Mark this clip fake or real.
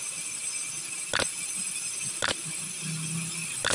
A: real